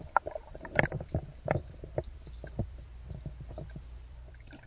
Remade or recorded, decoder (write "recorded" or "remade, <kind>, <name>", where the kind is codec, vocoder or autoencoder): remade, vocoder, BigVGAN v2